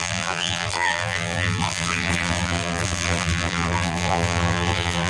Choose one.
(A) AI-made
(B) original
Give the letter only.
A